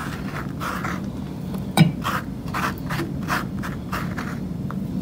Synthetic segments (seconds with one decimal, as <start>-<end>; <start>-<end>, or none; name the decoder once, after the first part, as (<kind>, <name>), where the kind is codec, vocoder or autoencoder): 0.0-3.0 (vocoder, BigVGAN v2)

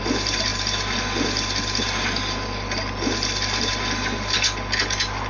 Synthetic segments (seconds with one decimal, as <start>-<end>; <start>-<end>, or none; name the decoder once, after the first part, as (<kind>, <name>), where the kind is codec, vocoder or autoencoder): none

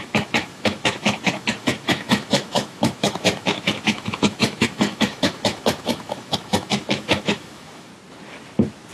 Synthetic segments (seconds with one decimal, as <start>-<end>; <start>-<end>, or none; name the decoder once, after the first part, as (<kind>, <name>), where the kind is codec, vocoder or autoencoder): 0.0-7.9 (autoencoder, DAC-VAE)

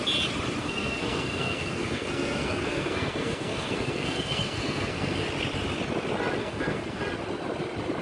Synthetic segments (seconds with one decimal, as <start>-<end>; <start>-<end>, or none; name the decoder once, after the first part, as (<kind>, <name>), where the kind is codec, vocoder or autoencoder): 0.6-5.2 (codec, SNAC); 6.4-7.0